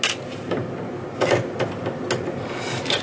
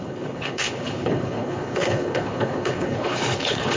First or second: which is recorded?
first